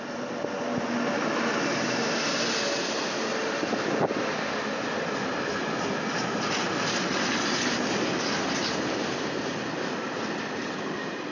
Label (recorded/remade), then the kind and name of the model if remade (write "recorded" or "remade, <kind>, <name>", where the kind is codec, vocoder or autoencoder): recorded